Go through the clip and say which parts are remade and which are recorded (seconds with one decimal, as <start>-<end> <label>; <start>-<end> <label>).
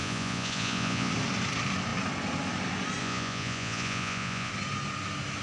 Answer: 0.0-1.1 remade; 1.1-3.0 recorded; 3.0-4.5 remade; 4.5-5.4 recorded